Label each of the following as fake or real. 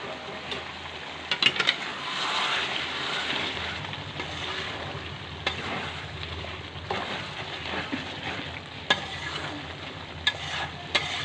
real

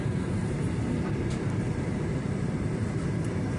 fake